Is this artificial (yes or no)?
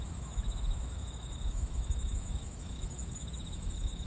yes